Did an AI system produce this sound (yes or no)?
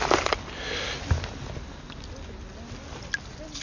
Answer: no